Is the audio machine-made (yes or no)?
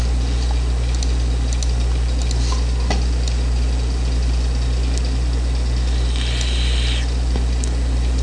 no